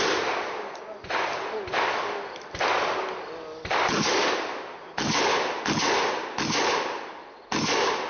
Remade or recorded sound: recorded